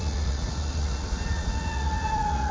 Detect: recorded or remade remade